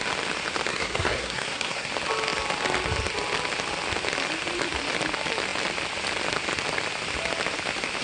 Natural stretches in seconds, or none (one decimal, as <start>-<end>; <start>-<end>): 0.0-0.7; 1.9-8.0